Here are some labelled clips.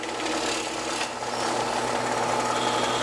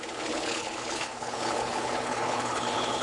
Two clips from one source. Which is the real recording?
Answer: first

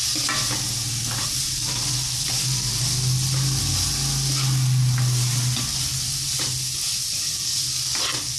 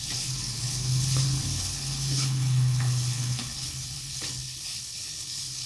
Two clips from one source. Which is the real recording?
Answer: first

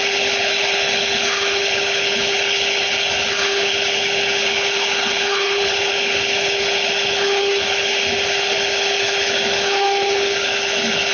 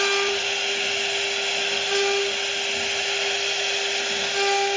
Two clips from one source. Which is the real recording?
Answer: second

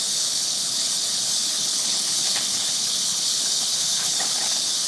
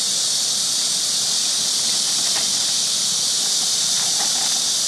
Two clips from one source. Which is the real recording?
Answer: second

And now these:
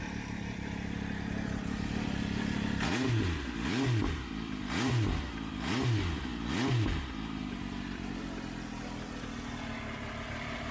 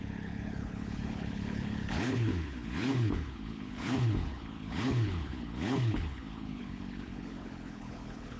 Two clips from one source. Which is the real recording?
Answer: first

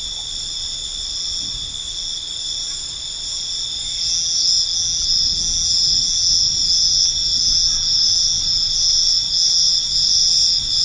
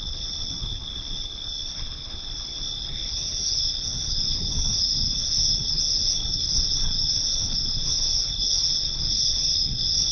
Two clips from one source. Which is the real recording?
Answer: first